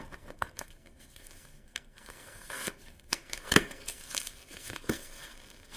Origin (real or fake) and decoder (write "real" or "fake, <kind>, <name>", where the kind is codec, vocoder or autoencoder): fake, codec, SNAC